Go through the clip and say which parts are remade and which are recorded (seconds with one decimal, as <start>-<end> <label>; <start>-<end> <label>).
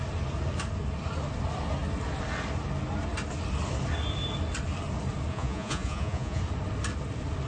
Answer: 0.0-5.3 recorded; 5.3-6.4 remade; 6.4-7.5 recorded